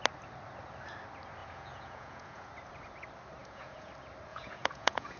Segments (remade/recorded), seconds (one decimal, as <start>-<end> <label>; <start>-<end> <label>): 0.0-1.4 recorded; 1.4-2.5 remade; 2.5-3.4 recorded; 3.4-3.9 remade; 3.9-4.3 recorded; 4.3-5.2 remade